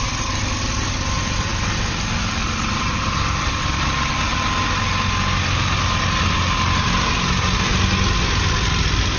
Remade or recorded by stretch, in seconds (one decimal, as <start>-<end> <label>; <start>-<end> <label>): 0.0-4.3 remade; 4.3-8.5 recorded; 8.5-9.2 remade